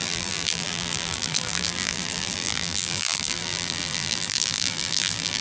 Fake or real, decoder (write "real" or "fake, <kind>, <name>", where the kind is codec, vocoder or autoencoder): fake, vocoder, BigVGAN v2